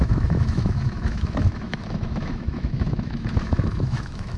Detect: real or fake fake